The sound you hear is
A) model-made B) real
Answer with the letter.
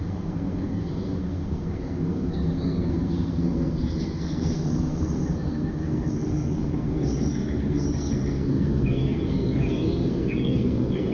A